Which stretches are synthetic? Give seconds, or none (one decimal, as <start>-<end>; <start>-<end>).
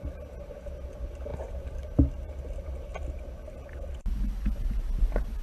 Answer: none